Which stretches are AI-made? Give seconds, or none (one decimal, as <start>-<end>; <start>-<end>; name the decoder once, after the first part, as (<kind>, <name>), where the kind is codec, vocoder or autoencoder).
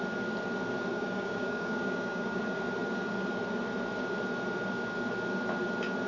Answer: 0.9-2.4 (codec, DAC)